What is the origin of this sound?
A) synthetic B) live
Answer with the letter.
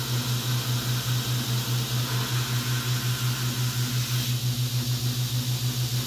B